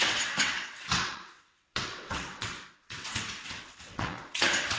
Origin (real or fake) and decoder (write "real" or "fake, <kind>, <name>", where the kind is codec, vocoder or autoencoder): fake, vocoder, WaveNeXt